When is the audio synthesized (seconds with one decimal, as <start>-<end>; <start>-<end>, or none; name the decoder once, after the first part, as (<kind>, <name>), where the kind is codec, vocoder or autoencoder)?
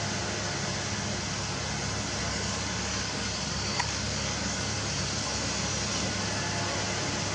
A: 2.2-4.9 (codec, DAC)